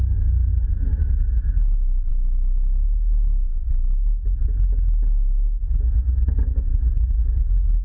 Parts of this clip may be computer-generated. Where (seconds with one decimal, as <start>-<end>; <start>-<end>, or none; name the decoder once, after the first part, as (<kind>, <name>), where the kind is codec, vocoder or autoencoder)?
6.7-7.2 (autoencoder, DAC-VAE)